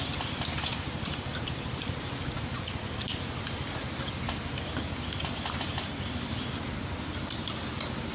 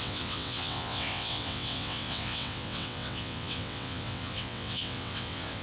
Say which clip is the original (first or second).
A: first